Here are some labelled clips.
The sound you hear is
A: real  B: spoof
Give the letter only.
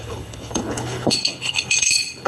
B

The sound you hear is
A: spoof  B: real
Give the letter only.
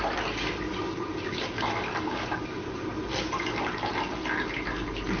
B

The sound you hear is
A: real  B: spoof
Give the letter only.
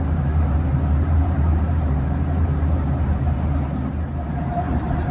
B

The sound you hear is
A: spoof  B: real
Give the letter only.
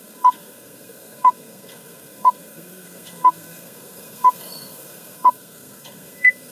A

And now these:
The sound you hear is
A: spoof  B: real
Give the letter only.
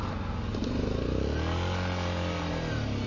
B